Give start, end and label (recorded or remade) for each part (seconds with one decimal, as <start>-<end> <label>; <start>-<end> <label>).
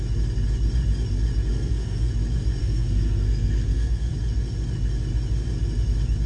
0.0-1.5 recorded; 1.5-2.1 remade; 2.1-2.6 recorded; 2.6-4.1 remade; 4.1-6.3 recorded